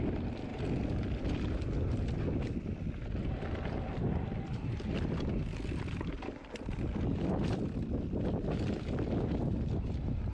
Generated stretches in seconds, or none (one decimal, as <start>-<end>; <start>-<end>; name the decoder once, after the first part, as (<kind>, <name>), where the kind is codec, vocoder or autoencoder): none